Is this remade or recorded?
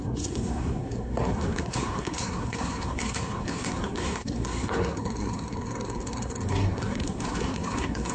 remade